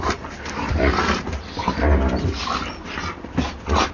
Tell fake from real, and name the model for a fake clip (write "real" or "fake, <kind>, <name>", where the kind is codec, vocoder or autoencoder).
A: real